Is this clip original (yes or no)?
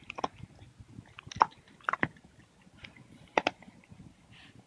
yes